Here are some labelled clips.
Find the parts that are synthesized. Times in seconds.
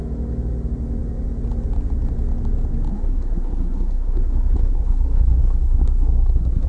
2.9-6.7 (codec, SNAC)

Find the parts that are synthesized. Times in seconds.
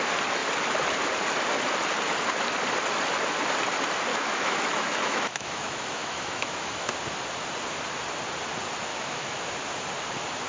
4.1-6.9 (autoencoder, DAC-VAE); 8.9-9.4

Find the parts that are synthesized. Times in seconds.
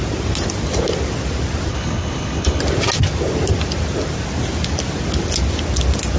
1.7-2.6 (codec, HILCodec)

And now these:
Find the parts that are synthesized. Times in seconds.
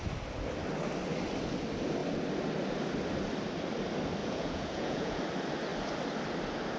4.2-5.2 (vocoder, Vocos)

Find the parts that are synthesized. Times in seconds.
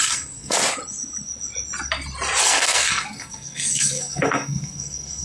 0.0-0.6 (codec, SNAC); 2.4-5.2